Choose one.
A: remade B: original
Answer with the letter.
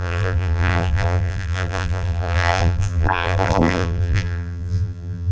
A